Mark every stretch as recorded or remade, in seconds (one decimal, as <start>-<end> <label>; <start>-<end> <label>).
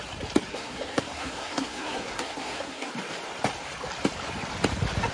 0.0-0.5 recorded; 0.5-2.9 remade; 2.9-5.1 recorded